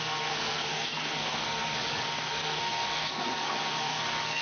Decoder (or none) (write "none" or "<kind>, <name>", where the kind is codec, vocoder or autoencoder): codec, SNAC